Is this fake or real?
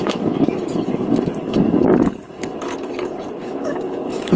fake